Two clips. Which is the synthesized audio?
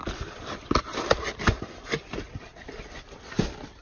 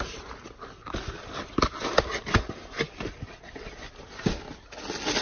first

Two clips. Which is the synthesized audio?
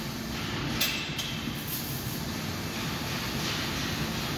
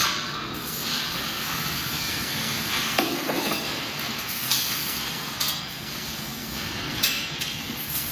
second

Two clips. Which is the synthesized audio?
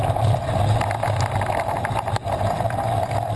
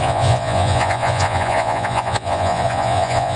second